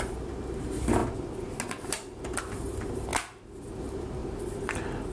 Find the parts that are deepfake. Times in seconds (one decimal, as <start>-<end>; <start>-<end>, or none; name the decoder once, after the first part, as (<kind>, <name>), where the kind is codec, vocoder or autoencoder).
0.0-1.0 (vocoder, BigVGAN v2); 2.4-3.1; 3.8-4.2